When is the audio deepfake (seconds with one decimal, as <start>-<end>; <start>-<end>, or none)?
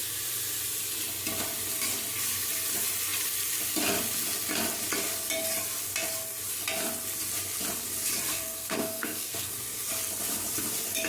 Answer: 8.3-9.5